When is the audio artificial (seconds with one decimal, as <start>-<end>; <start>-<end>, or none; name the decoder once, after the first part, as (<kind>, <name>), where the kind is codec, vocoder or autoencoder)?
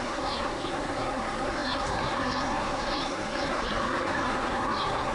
0.0-5.1 (codec, SNAC)